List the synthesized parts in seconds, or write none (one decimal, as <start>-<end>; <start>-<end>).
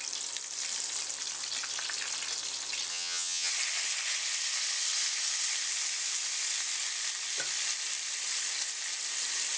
2.9-3.5